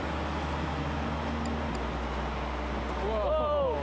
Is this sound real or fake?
real